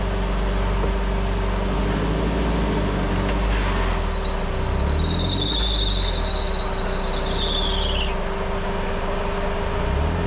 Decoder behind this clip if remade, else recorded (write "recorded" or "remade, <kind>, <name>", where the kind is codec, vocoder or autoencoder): recorded